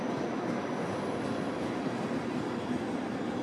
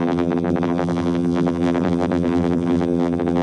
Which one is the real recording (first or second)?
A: first